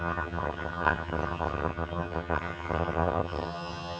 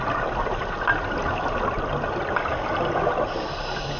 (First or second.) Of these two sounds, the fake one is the first